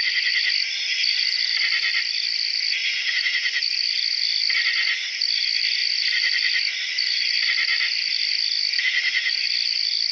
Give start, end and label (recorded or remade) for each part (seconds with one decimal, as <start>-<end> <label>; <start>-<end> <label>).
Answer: 0.0-10.1 recorded